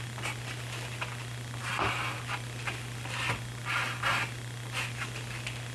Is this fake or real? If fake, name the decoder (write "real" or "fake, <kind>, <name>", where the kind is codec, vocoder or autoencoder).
real